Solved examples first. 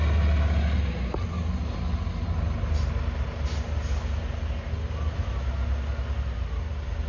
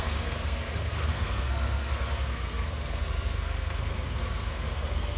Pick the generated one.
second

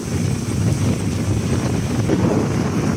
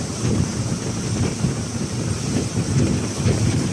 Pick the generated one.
second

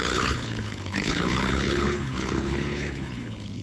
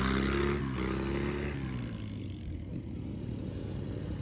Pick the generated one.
first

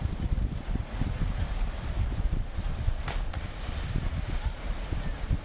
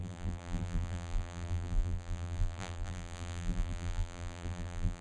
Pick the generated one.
second